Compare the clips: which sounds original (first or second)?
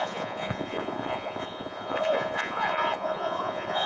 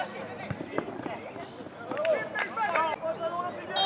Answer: second